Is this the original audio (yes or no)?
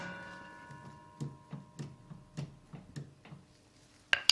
yes